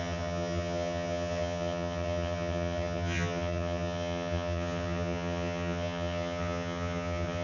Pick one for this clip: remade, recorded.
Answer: remade